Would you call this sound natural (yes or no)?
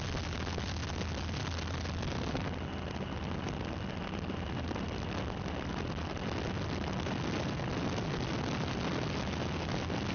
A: yes